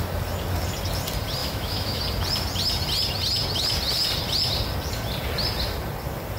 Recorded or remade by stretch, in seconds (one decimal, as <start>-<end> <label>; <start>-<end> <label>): 0.0-1.4 recorded; 1.4-2.0 remade; 2.0-6.4 recorded